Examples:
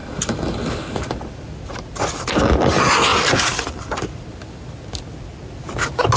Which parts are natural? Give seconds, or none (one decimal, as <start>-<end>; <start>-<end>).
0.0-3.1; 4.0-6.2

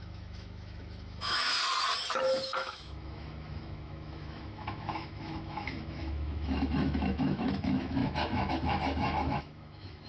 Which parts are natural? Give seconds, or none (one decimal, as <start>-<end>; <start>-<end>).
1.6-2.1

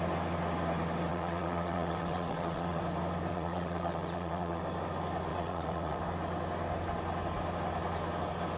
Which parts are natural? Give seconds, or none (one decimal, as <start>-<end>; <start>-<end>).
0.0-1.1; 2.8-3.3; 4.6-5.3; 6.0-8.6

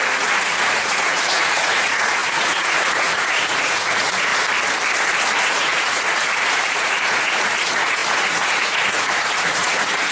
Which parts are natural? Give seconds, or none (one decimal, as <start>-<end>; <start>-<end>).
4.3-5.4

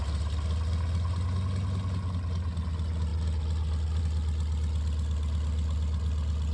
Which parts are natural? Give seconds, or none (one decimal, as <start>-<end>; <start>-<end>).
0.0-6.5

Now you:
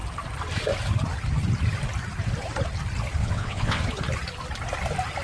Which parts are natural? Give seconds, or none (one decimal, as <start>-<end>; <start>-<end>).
0.0-3.2; 3.8-5.2